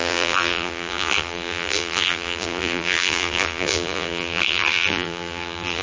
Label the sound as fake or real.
fake